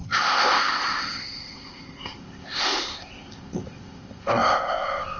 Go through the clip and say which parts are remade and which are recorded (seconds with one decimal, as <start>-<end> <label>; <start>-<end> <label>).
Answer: 0.0-5.2 remade